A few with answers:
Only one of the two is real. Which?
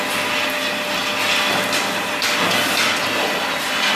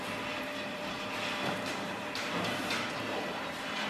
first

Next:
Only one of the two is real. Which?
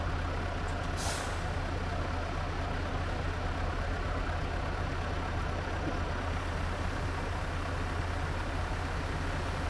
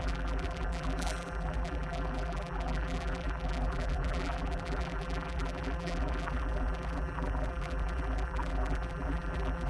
first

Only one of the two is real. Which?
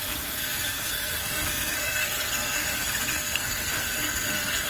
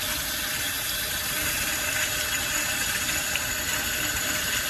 second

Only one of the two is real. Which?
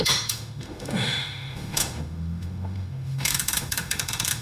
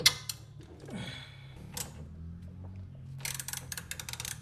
second